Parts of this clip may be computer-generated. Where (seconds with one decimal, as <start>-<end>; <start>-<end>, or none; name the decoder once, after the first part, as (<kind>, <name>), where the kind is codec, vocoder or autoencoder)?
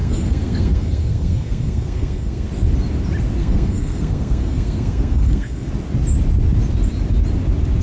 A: 0.0-2.5 (codec, SNAC); 3.4-5.7